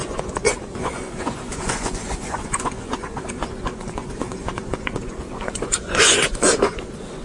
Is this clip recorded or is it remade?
remade